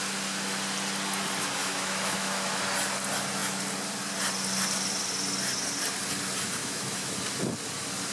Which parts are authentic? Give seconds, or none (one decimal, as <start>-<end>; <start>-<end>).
0.0-1.6; 2.6-6.6; 7.1-8.1